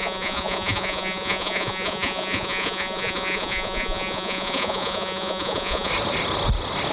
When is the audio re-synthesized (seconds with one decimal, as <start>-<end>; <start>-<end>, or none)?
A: 0.0-5.9